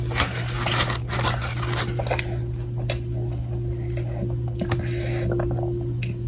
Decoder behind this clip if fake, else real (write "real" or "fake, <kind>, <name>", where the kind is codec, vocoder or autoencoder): real